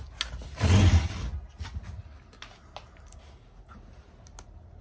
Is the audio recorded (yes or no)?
yes